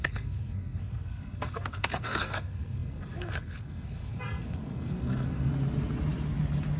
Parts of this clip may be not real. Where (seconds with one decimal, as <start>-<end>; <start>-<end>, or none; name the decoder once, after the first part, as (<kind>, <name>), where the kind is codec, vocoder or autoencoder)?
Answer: 0.0-5.5 (codec, SNAC)